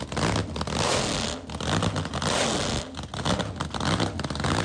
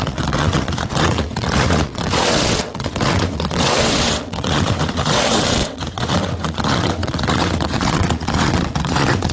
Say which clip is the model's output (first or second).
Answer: second